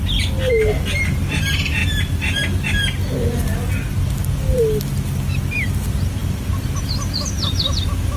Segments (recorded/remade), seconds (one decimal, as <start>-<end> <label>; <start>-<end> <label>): 0.0-8.2 recorded